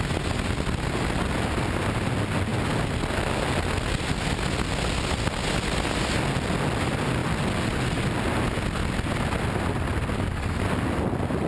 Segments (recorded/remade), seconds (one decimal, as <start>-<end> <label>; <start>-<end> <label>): 0.0-11.5 recorded